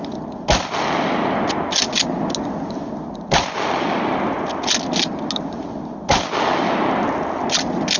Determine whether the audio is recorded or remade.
recorded